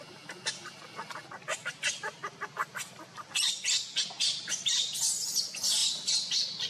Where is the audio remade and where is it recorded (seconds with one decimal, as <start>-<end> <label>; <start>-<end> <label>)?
0.0-2.6 recorded; 2.6-3.6 remade; 3.6-5.8 recorded; 5.8-6.7 remade

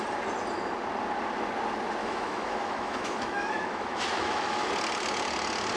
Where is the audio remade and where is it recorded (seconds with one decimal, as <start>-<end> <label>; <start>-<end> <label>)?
0.0-2.0 recorded; 2.0-4.7 remade; 4.7-5.8 recorded

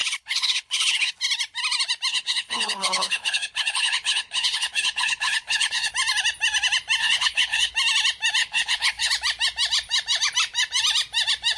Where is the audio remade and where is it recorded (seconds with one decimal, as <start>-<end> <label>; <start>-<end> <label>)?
0.0-1.1 remade; 1.1-2.1 recorded; 2.1-5.9 remade; 5.9-7.0 recorded; 7.0-7.7 remade; 7.7-8.4 recorded; 8.4-9.1 remade; 9.1-11.6 recorded

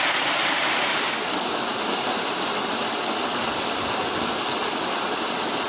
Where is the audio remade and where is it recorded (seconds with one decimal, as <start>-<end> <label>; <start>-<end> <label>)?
0.0-5.7 recorded

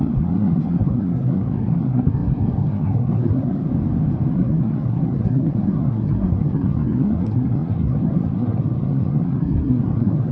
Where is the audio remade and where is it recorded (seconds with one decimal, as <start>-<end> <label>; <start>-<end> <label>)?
0.0-3.7 remade; 3.7-4.3 recorded; 4.3-10.3 remade

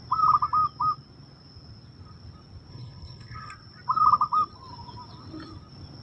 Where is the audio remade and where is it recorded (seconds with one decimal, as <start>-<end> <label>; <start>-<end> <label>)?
0.0-2.7 recorded; 2.7-3.5 remade; 3.5-6.0 recorded

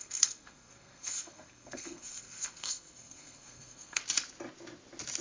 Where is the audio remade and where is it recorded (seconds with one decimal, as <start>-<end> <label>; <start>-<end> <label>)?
0.0-4.0 remade; 4.0-5.2 recorded

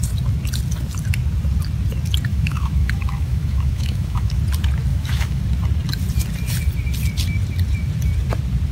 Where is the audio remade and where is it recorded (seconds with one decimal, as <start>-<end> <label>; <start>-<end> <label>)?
0.0-2.3 recorded; 2.3-4.4 remade; 4.4-4.9 recorded; 4.9-5.4 remade; 5.4-8.7 recorded